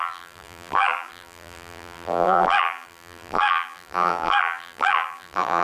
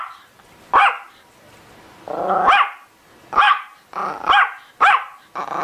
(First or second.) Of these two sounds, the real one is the second